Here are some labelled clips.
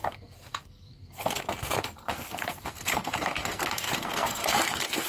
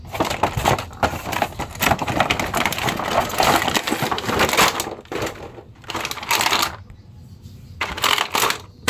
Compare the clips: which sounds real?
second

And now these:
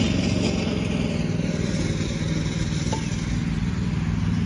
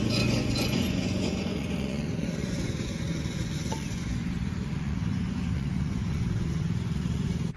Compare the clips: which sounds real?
first